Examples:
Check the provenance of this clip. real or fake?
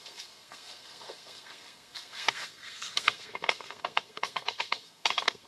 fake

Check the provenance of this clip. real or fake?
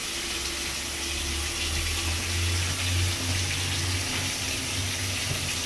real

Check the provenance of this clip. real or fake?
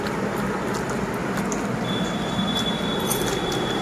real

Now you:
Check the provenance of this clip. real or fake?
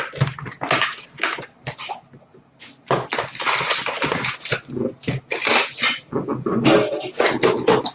real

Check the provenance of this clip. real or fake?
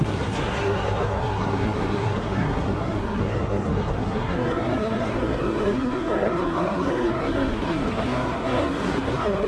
fake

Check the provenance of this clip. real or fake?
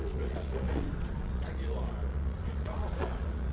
fake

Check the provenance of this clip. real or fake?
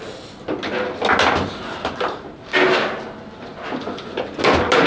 real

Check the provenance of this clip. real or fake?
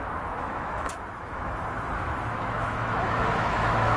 fake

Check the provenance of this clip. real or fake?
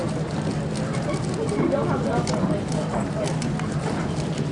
real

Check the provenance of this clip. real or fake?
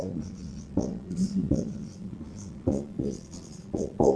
fake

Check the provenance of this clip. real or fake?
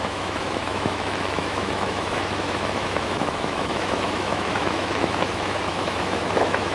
fake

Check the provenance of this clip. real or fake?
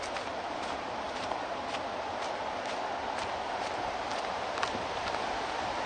real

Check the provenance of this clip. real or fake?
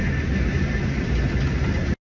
real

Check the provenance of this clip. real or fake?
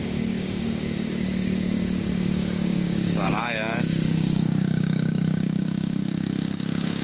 fake